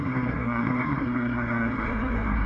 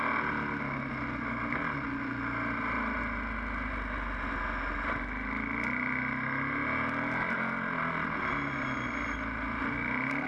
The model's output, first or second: first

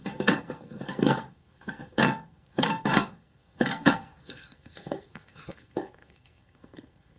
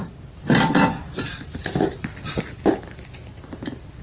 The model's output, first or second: first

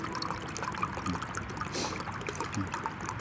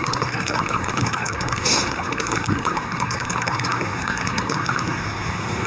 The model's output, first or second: second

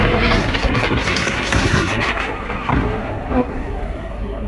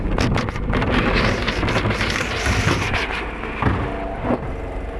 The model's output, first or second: first